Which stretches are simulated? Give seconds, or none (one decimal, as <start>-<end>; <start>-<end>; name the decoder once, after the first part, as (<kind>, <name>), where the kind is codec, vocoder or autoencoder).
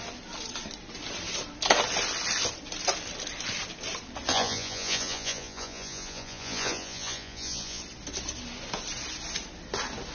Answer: 4.3-7.8 (vocoder, Vocos)